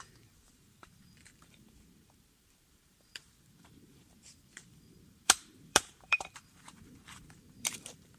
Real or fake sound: fake